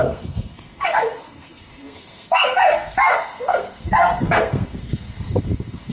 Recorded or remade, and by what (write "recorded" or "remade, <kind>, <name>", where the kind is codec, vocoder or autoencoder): remade, codec, SNAC